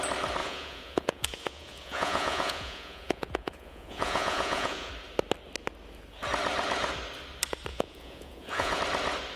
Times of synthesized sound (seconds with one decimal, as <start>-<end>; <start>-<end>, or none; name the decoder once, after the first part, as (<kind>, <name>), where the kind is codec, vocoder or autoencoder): 0.4-4.9 (vocoder, Vocos); 7.7-8.8